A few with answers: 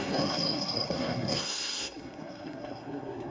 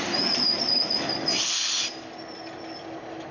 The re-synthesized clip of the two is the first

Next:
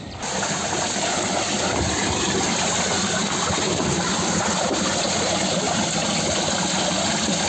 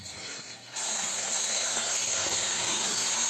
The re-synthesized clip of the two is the second